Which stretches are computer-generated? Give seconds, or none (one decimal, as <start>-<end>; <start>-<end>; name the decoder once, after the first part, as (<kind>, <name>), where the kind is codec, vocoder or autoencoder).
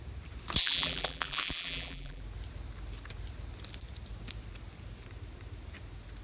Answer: 0.6-2.2 (vocoder, BigVGAN v2)